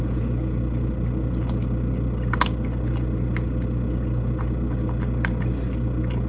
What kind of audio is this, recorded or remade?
recorded